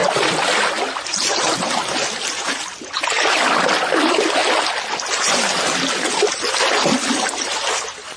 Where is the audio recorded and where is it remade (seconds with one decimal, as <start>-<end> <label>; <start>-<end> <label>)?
0.0-8.2 recorded